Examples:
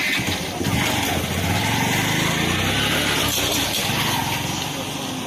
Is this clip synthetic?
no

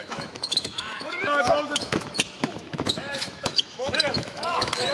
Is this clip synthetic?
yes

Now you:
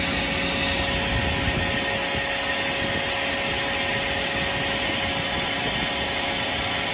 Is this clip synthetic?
no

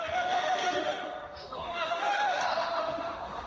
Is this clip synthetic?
yes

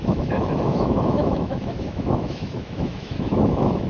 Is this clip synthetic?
yes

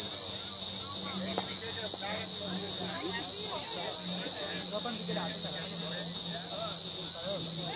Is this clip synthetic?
no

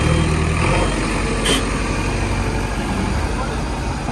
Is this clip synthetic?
no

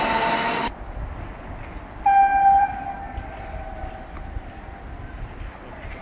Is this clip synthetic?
no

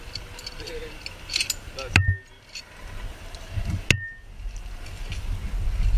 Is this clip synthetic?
no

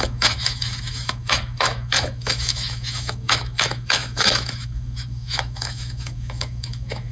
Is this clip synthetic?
yes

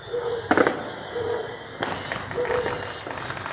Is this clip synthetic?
no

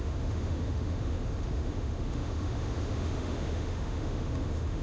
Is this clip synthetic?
yes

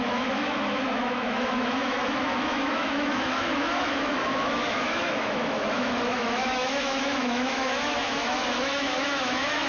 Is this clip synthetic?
yes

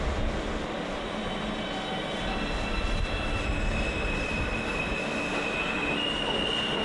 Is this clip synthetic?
no